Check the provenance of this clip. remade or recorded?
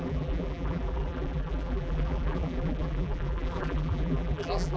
remade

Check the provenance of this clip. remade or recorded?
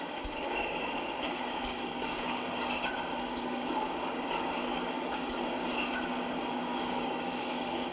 remade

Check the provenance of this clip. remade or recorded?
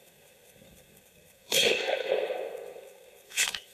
remade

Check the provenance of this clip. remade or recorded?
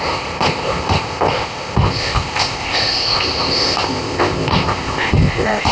remade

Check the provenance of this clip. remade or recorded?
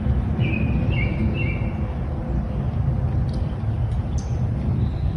recorded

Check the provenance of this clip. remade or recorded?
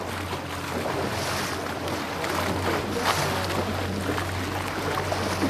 recorded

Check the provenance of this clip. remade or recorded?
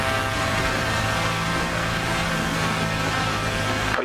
remade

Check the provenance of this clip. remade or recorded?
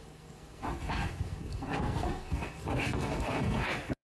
remade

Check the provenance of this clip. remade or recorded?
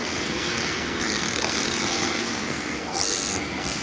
remade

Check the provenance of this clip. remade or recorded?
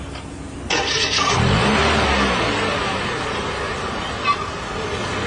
recorded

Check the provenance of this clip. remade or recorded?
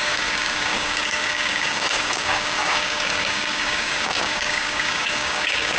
remade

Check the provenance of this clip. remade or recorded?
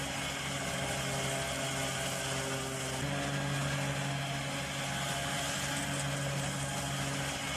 recorded